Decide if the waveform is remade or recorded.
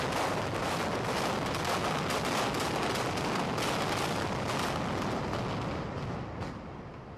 recorded